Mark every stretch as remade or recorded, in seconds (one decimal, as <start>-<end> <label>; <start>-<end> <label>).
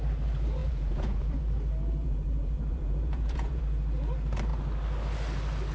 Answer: 0.0-0.6 recorded; 0.6-1.4 remade; 1.4-2.0 recorded; 2.0-3.6 remade; 3.6-5.7 recorded